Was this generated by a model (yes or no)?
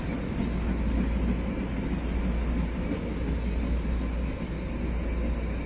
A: no